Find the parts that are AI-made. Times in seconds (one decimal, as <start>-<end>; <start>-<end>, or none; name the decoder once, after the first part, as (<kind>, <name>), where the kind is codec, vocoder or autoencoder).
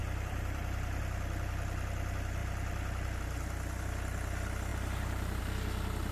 0.0-1.0 (vocoder, BigVGAN v2); 2.4-3.2; 4.7-5.4